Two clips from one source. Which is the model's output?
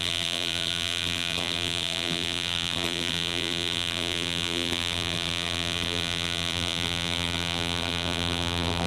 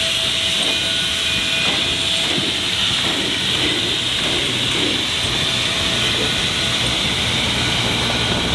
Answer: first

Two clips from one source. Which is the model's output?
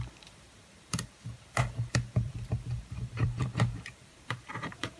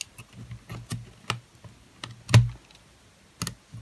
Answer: first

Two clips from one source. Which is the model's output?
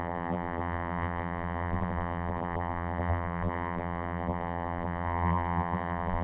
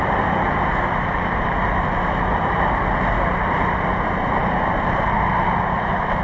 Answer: first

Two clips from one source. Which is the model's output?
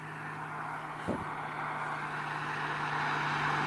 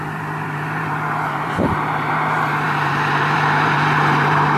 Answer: second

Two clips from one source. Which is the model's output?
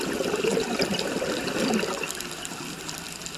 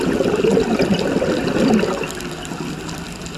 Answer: first